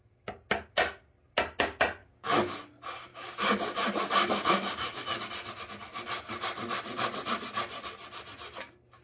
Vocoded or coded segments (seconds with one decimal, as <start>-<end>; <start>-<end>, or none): 2.0-2.5; 3.1-5.2